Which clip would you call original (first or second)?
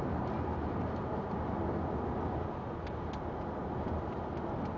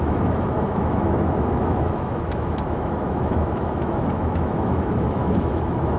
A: first